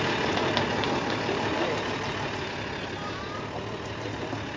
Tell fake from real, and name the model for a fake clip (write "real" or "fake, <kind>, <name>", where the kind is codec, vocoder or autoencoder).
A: real